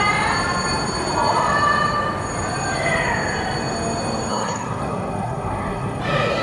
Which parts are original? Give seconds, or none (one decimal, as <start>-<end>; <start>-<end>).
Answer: 0.0-4.3; 6.0-6.4